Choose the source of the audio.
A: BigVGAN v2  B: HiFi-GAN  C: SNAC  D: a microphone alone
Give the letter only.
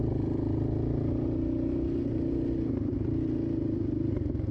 D